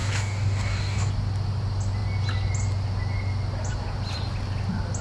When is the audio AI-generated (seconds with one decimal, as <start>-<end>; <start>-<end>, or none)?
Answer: 0.0-1.1